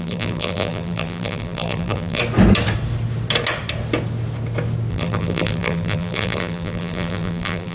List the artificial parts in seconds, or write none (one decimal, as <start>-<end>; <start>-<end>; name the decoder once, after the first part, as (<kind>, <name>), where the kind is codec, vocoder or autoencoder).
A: 0.0-2.2 (vocoder, BigVGAN v2); 4.9-7.7